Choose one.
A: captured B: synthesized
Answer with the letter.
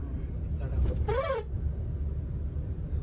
A